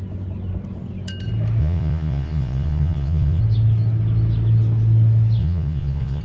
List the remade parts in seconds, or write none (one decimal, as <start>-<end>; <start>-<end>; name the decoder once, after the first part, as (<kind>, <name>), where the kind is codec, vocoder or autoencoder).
1.6-3.4 (vocoder, Vocos); 5.4-6.2